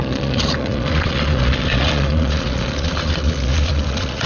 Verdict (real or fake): fake